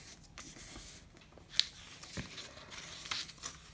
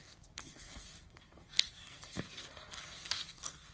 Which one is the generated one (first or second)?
second